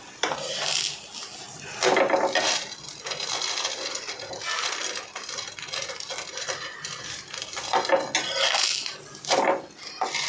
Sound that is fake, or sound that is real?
real